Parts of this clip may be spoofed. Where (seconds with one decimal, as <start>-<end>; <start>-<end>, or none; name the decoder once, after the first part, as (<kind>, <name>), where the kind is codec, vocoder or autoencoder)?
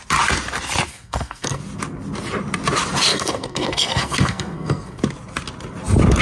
0.9-1.6 (codec, SNAC); 3.1-5.0